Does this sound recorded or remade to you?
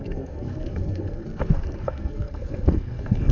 remade